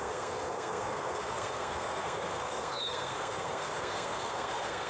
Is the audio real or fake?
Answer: fake